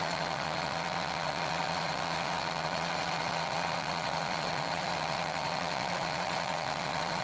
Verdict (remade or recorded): remade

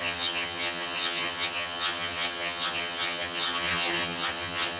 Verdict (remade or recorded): remade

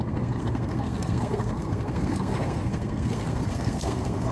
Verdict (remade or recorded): remade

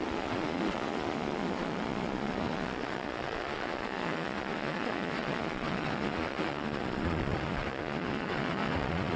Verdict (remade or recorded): remade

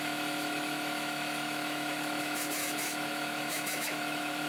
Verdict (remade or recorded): remade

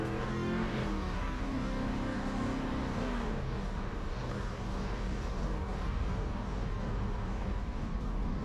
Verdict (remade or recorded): remade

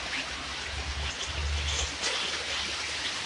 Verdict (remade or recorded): recorded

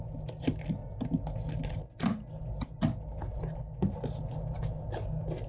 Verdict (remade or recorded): recorded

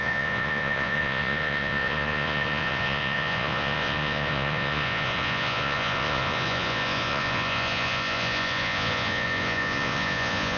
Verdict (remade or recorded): remade